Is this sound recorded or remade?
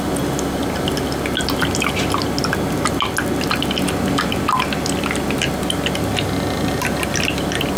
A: recorded